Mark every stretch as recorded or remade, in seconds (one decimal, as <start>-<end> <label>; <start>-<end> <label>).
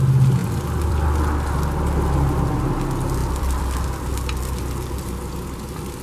0.0-3.2 recorded; 3.2-4.5 remade; 4.5-6.0 recorded